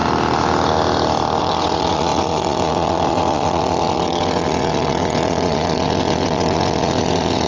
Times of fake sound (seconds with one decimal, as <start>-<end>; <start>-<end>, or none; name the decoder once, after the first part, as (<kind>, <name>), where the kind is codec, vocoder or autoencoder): 1.4-7.5 (vocoder, WaveNeXt)